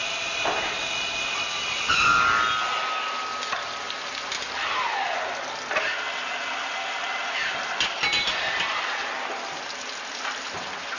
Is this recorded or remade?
recorded